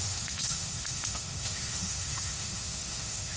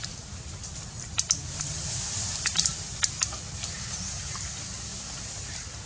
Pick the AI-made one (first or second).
first